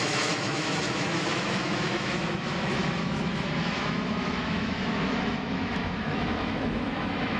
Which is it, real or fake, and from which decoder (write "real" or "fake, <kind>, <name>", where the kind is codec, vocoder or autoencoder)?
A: fake, autoencoder, DAC-VAE